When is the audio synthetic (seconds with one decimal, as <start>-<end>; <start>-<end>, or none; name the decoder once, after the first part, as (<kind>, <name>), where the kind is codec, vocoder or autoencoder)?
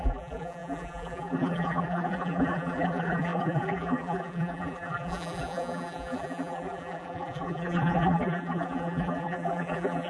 0.0-10.1 (vocoder, BigVGAN v2)